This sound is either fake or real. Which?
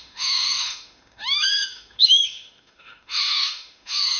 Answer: fake